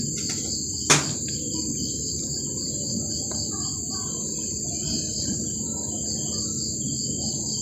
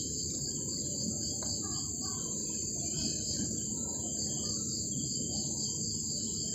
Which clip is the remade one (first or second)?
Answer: second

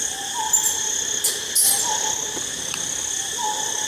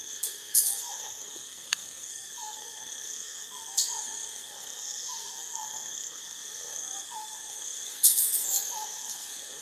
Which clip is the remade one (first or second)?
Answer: second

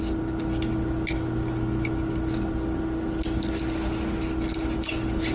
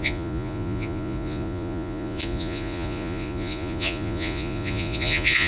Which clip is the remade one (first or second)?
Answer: second